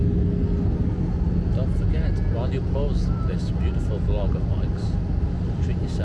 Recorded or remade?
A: recorded